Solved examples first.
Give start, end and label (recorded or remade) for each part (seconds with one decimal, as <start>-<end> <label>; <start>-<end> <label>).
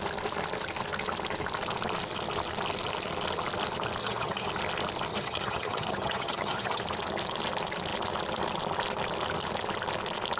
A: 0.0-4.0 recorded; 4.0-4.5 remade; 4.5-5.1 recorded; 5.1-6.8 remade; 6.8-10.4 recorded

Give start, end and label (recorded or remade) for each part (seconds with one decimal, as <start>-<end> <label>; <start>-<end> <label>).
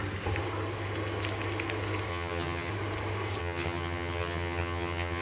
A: 0.0-2.1 recorded; 2.1-2.7 remade; 2.7-3.4 recorded; 3.4-5.2 remade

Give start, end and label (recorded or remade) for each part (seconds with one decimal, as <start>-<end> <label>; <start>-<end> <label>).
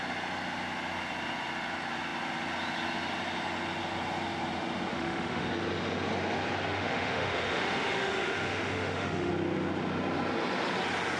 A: 0.0-4.9 recorded; 4.9-5.5 remade; 5.5-6.7 recorded; 6.7-9.3 remade; 9.3-11.2 recorded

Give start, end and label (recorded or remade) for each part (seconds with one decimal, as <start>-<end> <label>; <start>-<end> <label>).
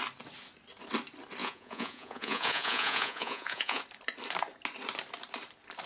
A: 0.0-1.4 recorded; 1.4-3.8 remade; 3.8-5.9 recorded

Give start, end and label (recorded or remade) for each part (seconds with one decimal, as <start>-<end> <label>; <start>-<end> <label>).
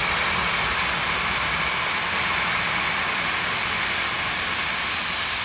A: 0.0-5.4 remade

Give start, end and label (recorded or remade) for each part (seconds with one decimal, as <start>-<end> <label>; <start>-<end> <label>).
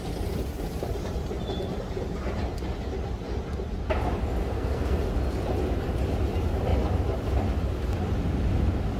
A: 0.0-4.4 recorded; 4.4-5.0 remade; 5.0-9.0 recorded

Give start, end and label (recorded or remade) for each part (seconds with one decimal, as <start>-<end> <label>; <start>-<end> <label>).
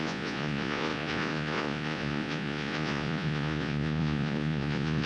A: 0.0-5.1 remade